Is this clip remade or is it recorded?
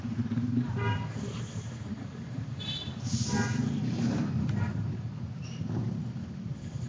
remade